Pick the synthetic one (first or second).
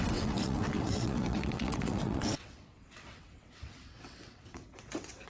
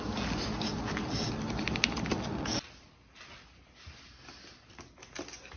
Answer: first